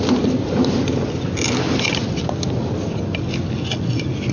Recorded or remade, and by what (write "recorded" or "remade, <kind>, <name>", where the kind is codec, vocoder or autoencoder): recorded